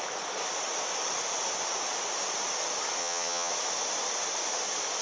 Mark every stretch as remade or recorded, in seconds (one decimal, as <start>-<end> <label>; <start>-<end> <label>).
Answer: 0.0-3.0 recorded; 3.0-3.5 remade; 3.5-5.0 recorded